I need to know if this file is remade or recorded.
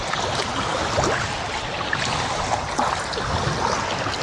recorded